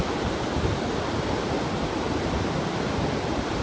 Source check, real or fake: real